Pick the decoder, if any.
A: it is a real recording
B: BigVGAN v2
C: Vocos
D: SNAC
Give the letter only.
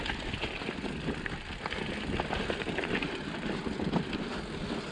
A